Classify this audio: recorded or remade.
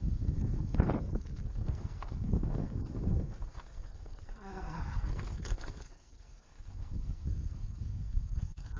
remade